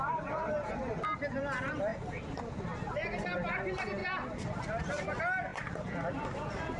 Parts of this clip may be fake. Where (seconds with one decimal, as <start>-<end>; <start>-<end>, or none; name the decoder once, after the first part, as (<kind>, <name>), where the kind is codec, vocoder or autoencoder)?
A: 4.0-4.9 (vocoder, BigVGAN v2); 5.5-6.8